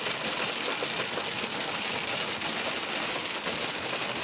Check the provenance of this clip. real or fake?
real